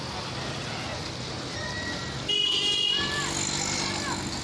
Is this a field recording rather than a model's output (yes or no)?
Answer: yes